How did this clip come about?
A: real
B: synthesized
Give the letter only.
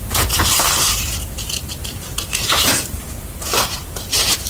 B